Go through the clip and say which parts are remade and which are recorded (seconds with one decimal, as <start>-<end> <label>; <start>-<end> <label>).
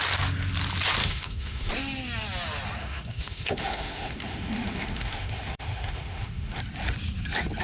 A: 0.0-1.0 recorded; 1.0-1.7 remade; 1.7-2.8 recorded; 2.8-6.6 remade; 6.6-7.6 recorded